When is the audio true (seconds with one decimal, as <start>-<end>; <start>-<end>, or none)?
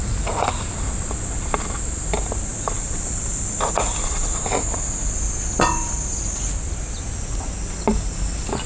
0.0-8.7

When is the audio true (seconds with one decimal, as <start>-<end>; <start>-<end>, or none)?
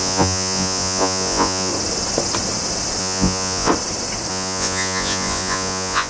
1.7-3.0; 3.7-4.3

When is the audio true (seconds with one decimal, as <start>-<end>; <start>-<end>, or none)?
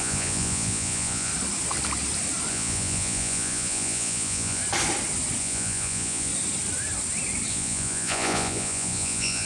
1.3-2.5; 4.6-5.4; 6.3-7.5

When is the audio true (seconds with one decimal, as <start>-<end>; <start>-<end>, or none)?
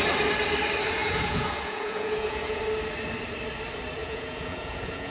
0.0-1.0; 2.6-4.0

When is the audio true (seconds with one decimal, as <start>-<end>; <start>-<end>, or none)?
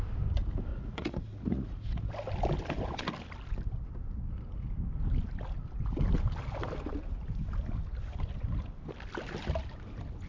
0.0-0.7; 2.1-10.3